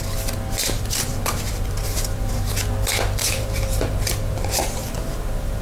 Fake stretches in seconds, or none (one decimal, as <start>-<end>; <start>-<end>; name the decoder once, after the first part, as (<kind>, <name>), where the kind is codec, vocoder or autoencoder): 0.6-2.3 (vocoder, BigVGAN v2); 3.2-5.6